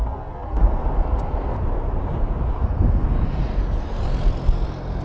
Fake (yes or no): no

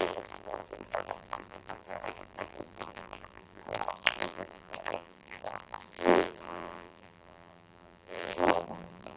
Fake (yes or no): yes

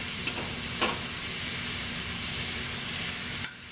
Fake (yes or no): no